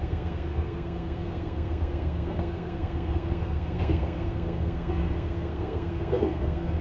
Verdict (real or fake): fake